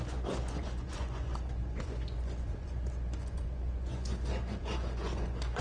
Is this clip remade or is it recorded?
remade